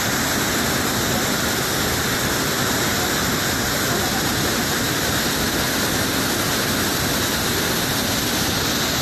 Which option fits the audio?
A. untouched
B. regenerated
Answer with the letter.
A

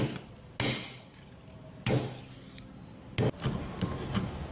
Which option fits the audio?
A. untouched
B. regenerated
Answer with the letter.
A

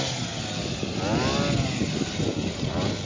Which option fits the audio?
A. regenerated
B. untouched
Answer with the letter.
B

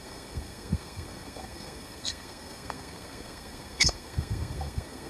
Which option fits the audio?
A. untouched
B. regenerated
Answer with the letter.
B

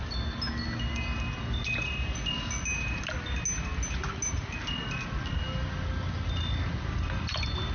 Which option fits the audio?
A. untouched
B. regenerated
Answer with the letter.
A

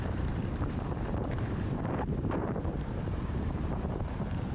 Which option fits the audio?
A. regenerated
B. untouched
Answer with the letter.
A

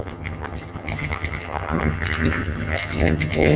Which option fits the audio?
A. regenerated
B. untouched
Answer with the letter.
A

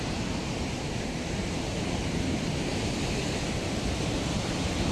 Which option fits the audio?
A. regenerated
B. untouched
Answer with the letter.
B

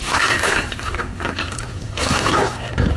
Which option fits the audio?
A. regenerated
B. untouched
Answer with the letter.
A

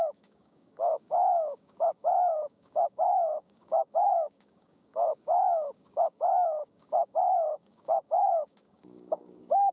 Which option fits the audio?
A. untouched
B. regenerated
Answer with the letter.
B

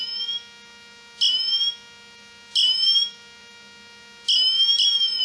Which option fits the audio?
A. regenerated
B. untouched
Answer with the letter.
B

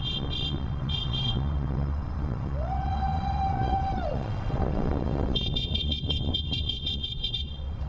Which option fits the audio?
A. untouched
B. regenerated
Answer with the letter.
B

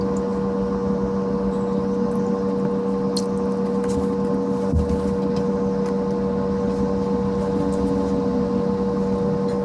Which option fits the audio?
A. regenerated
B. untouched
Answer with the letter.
B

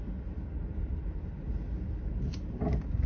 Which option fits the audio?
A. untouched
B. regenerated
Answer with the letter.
A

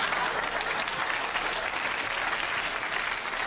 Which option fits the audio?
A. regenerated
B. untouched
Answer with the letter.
B